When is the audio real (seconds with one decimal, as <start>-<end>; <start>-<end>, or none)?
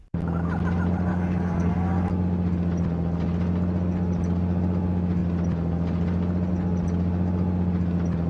0.0-1.1; 1.7-8.3